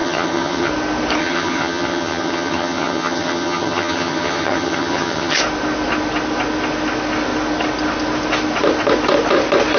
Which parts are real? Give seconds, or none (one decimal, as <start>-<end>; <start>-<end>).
0.7-1.2; 5.4-9.8

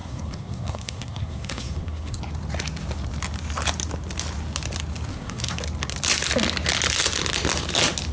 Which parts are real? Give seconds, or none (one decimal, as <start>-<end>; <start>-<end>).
2.2-5.1; 5.6-8.1

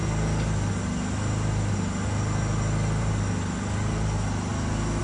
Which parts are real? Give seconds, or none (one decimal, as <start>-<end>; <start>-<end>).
0.0-5.0

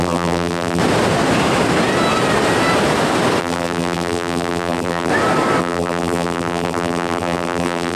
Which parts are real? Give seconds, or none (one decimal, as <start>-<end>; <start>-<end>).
0.8-3.4; 5.1-5.6

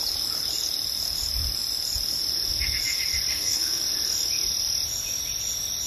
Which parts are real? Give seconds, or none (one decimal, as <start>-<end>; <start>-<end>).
0.0-3.3; 3.8-5.9

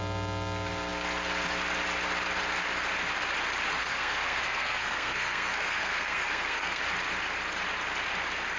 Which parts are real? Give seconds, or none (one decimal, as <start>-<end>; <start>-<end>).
0.0-3.8; 6.8-8.6